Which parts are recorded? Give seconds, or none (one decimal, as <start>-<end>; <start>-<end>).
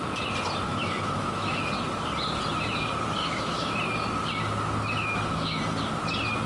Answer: 0.0-0.7; 1.7-3.2; 3.8-5.0; 5.6-6.5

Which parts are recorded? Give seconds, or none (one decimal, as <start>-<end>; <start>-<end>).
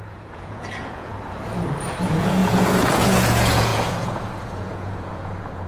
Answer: 1.1-2.0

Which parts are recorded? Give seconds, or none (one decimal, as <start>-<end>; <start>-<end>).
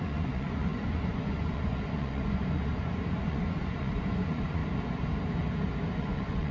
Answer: 4.6-6.0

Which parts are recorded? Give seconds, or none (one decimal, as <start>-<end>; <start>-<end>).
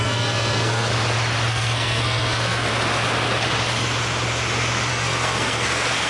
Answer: 0.9-1.5; 2.7-4.9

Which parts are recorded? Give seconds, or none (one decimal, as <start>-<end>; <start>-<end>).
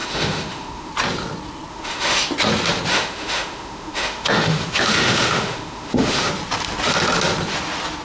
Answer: 0.9-1.7; 2.3-2.9; 6.3-8.0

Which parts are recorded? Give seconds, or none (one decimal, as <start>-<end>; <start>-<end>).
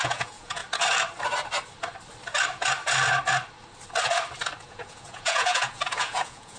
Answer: 0.6-4.6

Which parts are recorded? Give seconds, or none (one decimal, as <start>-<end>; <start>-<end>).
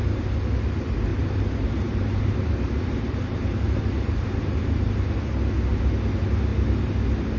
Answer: 0.0-1.1; 5.5-7.4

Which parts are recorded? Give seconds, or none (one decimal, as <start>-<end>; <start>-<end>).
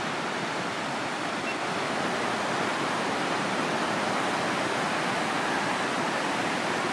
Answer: 0.0-2.7; 4.1-6.9